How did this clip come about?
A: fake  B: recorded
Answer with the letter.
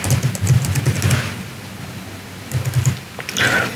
B